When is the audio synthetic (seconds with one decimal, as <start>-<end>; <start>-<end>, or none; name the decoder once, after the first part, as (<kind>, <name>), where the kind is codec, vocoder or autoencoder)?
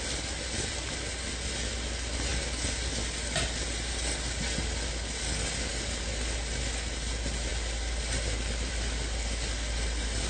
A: none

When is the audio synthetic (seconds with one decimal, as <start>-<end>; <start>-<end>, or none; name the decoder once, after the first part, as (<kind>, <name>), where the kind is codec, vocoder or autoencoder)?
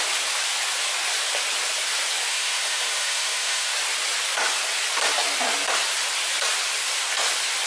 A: 2.3-3.7 (autoencoder, DAC-VAE)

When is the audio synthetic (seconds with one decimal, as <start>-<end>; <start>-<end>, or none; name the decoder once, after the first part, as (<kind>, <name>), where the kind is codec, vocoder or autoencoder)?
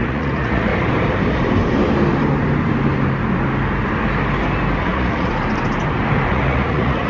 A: 0.0-0.7 (vocoder, Vocos); 4.8-5.3; 6.3-7.1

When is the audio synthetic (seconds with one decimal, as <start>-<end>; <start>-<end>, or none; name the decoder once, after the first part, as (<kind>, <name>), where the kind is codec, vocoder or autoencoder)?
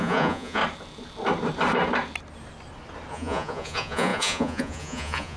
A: 0.0-0.6 (vocoder, Vocos); 3.1-5.4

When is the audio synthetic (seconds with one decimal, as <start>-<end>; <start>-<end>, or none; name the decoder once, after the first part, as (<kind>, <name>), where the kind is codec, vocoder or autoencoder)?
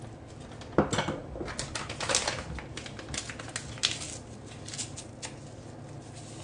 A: none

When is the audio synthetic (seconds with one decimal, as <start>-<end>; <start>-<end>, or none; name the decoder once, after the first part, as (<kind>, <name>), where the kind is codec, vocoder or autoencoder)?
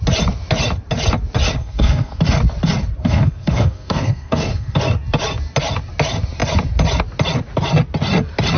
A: 1.6-2.2 (codec, SNAC); 3.0-4.8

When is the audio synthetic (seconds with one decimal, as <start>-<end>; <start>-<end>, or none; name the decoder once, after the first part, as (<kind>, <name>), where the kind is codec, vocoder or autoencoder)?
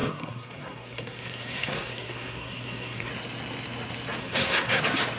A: 0.0-3.1 (codec, SNAC); 4.2-4.8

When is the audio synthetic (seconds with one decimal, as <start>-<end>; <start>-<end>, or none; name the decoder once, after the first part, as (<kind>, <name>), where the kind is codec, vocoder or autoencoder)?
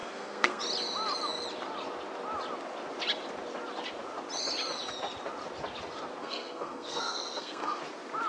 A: 0.0-0.6 (codec, SNAC); 6.2-7.8